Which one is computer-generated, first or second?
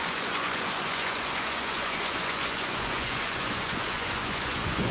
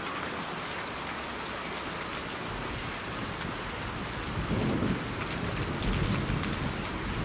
first